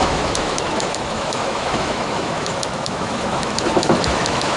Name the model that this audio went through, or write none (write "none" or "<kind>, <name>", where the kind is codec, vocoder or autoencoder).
autoencoder, DAC-VAE